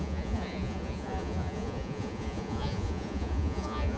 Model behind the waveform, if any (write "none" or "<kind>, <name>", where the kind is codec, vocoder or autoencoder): vocoder, Vocos